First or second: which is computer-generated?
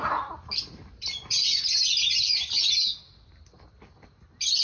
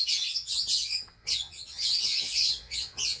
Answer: second